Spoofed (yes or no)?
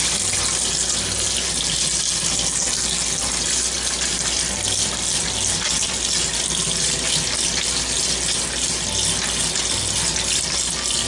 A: no